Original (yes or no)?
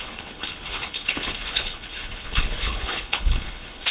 no